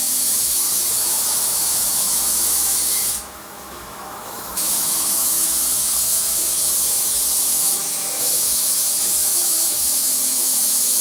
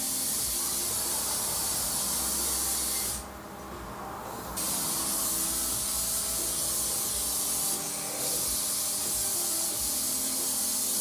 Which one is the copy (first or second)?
first